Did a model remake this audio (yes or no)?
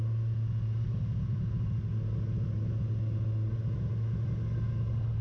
no